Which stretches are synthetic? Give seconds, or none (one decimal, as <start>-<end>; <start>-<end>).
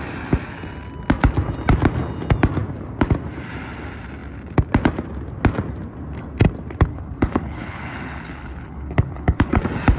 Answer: 6.9-9.6